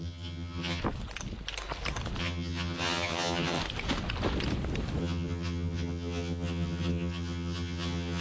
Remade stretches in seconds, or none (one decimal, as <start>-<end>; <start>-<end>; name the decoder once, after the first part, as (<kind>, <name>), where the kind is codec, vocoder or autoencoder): 0.0-0.8 (vocoder, HiFi-GAN); 2.2-3.6; 5.0-8.2